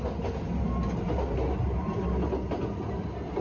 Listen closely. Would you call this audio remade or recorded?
recorded